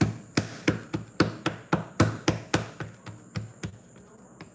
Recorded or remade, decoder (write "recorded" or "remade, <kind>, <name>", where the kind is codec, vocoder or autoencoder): recorded